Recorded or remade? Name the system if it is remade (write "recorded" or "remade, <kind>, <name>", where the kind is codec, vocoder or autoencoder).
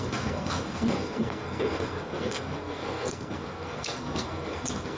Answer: remade, codec, SNAC